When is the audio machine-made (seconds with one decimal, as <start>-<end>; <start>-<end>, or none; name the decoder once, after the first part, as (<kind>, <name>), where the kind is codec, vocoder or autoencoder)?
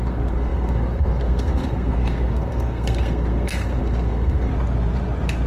0.0-4.5 (codec, SNAC)